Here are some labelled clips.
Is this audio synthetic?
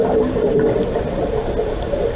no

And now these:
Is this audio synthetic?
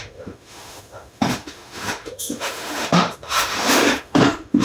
yes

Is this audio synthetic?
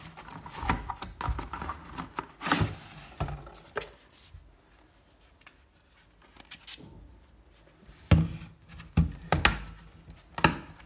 no